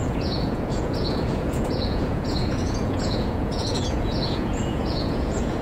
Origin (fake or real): fake